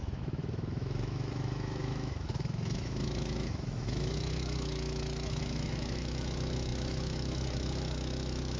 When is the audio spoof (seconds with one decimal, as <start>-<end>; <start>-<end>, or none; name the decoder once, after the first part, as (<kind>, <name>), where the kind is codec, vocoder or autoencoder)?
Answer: 0.0-8.6 (autoencoder, DAC-VAE)